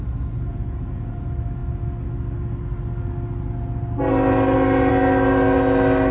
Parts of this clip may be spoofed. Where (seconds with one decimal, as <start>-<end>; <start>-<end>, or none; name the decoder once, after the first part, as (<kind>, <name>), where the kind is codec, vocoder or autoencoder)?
0.5-1.2 (vocoder, Vocos)